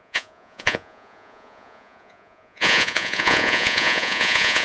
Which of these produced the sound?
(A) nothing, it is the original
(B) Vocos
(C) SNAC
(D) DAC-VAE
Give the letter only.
B